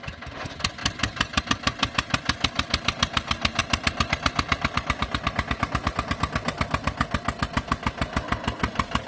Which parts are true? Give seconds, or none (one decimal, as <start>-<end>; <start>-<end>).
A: 0.0-0.8; 1.4-9.1